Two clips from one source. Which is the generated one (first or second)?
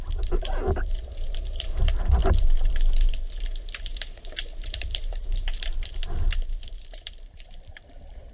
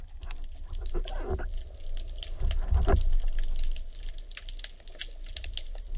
first